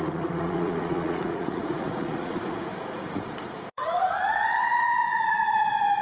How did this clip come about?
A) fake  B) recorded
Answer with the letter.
A